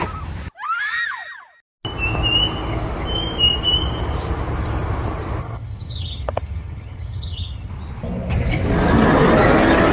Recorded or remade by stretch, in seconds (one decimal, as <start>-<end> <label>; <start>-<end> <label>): 0.0-5.4 recorded; 5.4-7.7 remade; 7.7-9.9 recorded